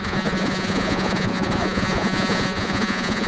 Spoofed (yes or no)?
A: yes